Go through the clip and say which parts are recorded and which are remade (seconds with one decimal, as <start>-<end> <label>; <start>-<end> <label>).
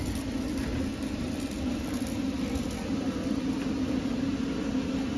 0.0-5.2 recorded